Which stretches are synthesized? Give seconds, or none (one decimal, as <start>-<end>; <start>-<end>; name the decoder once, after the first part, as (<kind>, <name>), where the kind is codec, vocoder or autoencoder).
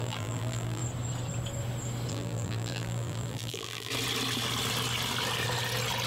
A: 0.0-0.8 (vocoder, BigVGAN v2); 2.1-3.9